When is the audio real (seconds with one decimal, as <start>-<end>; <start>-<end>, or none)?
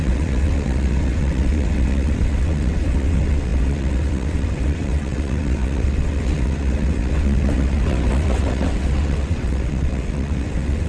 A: none